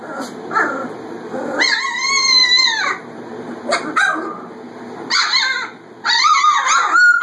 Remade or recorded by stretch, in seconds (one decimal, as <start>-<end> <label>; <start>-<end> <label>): 0.0-7.2 recorded

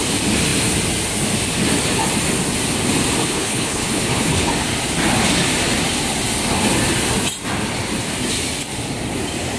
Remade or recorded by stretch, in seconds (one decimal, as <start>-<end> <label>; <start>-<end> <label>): 0.0-3.2 recorded; 3.2-4.5 remade; 4.5-9.6 recorded

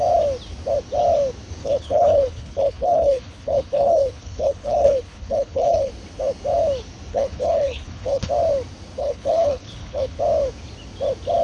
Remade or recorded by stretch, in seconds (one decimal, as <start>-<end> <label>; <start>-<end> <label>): 0.0-1.6 recorded; 1.6-5.9 remade; 5.9-7.1 recorded; 7.1-8.3 remade; 8.3-9.0 recorded; 9.0-10.2 remade; 10.2-11.4 recorded

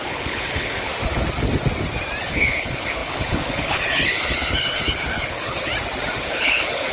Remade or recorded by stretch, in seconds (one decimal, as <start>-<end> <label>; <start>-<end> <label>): 0.0-0.9 remade; 0.9-2.2 recorded; 2.2-5.7 remade; 5.7-6.2 recorded; 6.2-6.9 remade